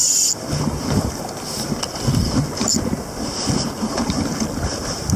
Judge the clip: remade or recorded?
recorded